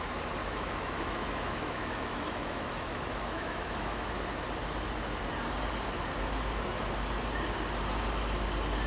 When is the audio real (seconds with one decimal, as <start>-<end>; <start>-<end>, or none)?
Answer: 0.0-0.4; 4.2-8.9

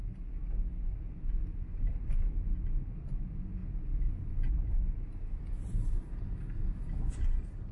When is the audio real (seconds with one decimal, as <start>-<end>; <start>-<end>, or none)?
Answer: 0.0-7.7

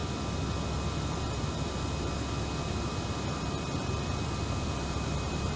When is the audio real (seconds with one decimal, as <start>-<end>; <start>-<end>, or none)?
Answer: 0.0-0.9

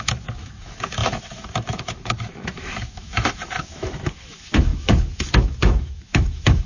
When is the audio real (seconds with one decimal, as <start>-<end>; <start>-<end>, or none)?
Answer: none

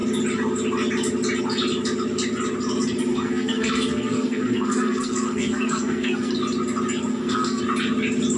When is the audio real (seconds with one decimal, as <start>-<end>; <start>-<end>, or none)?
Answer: 0.0-3.1; 6.3-7.1; 7.6-8.4